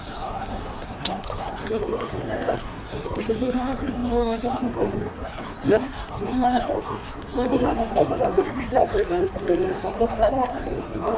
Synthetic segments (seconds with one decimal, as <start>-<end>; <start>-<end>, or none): 0.0-11.2